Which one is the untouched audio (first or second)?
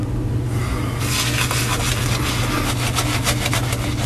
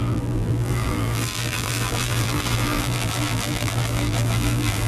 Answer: first